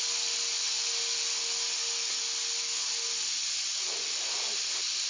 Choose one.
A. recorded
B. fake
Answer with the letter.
A